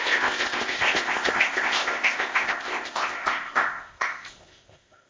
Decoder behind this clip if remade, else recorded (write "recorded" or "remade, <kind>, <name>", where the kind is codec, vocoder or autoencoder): remade, codec, ZipCodec